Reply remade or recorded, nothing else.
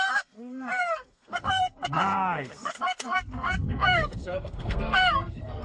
remade